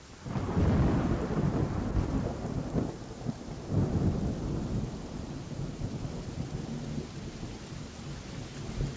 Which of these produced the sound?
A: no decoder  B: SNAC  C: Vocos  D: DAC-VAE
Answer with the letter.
A